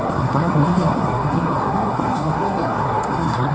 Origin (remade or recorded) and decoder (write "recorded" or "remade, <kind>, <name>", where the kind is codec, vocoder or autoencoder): remade, codec, SNAC